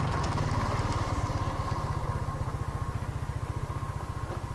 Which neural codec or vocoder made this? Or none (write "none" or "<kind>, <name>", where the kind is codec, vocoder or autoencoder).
none